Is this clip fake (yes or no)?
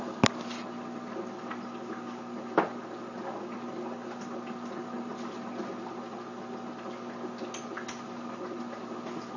no